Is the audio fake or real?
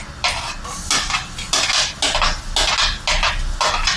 real